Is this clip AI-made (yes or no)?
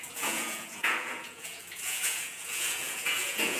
yes